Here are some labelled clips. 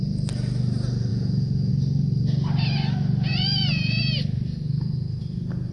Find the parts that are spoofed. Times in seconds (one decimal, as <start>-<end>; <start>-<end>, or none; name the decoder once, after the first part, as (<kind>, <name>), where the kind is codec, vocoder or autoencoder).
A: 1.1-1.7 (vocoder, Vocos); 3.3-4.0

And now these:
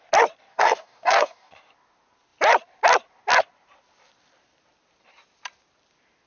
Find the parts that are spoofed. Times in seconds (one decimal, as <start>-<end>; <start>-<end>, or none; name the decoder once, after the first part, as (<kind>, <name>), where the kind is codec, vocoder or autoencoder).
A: 0.5-1.5 (codec, DAC)

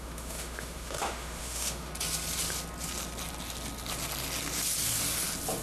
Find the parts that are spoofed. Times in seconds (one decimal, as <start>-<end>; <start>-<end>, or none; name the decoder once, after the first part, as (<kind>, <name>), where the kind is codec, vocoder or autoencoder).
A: 0.0-1.9 (autoencoder, DAC-VAE)